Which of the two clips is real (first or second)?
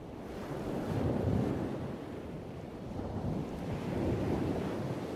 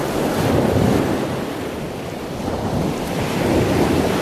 second